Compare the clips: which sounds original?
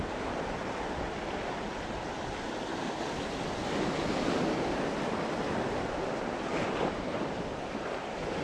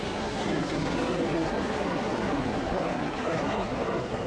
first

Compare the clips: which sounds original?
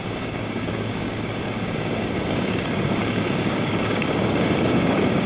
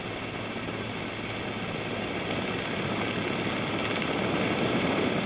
second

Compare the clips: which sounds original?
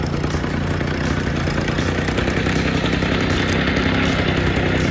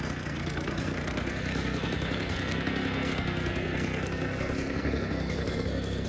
first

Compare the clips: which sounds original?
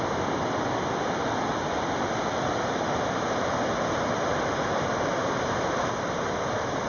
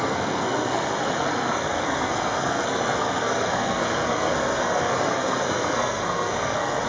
first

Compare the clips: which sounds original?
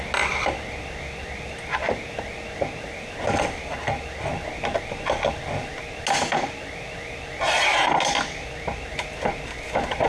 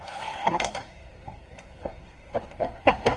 first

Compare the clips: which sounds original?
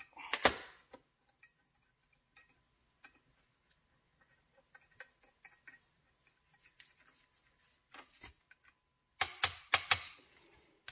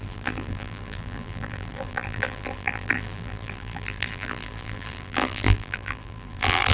first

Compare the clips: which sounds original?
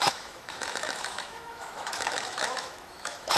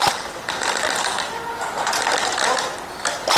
second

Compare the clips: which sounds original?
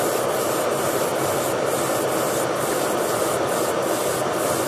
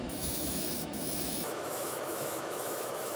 first